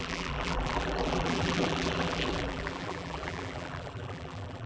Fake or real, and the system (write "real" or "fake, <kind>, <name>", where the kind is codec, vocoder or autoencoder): fake, vocoder, BigVGAN v2